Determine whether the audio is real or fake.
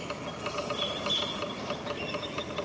real